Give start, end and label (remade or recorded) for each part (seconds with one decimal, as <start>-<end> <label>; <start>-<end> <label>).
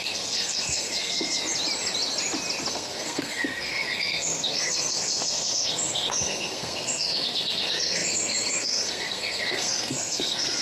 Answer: 0.0-1.4 remade; 1.4-2.7 recorded; 2.7-10.6 remade